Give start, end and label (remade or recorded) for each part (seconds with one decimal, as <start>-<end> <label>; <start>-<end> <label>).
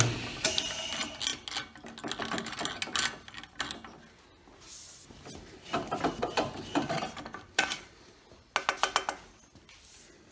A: 0.0-10.3 recorded